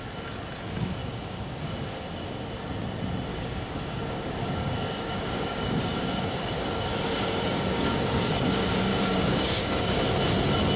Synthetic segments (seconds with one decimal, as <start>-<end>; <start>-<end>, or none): 1.0-2.0; 3.3-8.3; 8.9-10.0

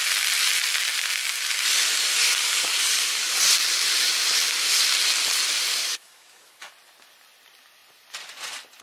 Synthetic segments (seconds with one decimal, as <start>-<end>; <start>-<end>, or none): 2.2-3.3; 5.8-6.7

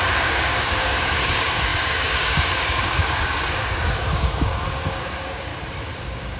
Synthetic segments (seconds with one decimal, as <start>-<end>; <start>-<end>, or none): 0.0-5.5; 6.0-6.4

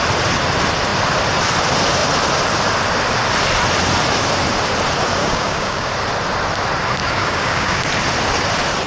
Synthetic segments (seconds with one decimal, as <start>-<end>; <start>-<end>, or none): 5.2-5.9; 7.0-7.8

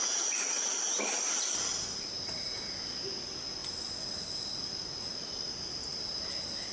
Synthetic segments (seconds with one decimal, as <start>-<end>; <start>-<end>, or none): none

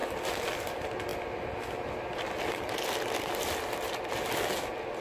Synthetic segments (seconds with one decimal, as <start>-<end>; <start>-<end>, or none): none

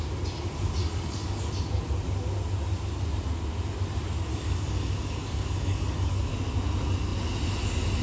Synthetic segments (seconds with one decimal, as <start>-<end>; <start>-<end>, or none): 0.8-1.5; 4.3-6.3

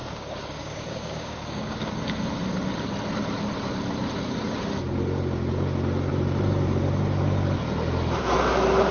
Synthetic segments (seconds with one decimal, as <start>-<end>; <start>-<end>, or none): 0.0-1.9